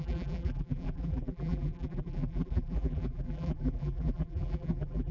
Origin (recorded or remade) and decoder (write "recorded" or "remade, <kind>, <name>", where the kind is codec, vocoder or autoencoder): remade, vocoder, BigVGAN v2